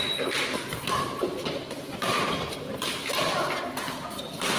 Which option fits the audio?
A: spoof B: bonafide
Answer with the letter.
B